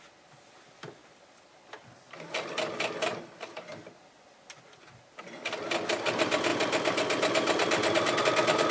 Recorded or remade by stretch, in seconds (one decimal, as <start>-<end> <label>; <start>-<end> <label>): 0.0-8.7 recorded